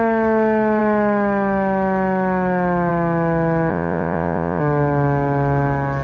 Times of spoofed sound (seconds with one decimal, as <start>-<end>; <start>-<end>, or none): 3.7-4.6